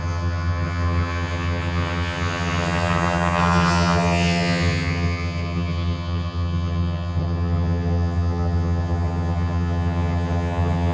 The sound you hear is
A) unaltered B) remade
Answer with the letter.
B